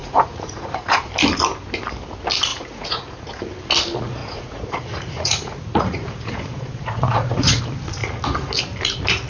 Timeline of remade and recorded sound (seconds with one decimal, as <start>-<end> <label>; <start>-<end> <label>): 0.0-1.1 remade; 1.1-2.5 recorded; 2.5-3.4 remade; 3.4-4.2 recorded; 4.2-7.6 remade; 7.6-9.3 recorded